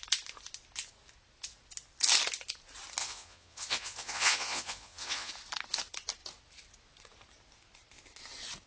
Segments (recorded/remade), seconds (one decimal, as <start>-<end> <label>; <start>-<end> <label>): 0.0-3.0 recorded; 3.0-5.3 remade; 5.3-8.7 recorded